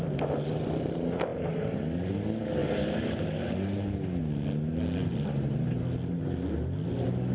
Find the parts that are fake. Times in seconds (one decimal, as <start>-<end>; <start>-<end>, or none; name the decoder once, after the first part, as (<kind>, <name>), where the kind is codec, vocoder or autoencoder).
2.6-4.2 (vocoder, BigVGAN v2); 5.0-5.8

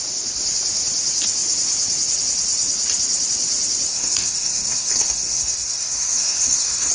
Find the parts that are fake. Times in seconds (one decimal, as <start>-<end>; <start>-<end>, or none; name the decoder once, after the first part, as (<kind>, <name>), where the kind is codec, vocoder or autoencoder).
3.9-6.9 (codec, SNAC)

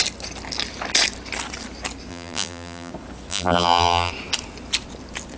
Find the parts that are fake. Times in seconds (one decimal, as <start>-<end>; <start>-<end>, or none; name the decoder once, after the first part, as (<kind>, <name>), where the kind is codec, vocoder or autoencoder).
2.1-2.9 (vocoder, BigVGAN v2); 3.3-4.1